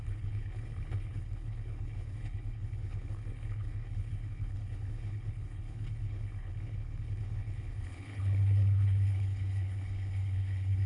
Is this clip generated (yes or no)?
yes